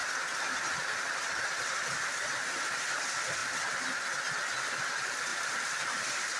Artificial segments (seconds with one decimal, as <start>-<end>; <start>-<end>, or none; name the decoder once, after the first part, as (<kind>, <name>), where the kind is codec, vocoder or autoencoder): 5.3-6.4 (vocoder, BigVGAN v2)